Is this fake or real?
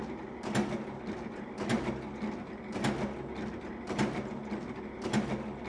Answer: real